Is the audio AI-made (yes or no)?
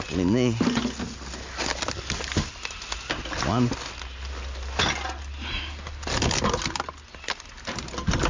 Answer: no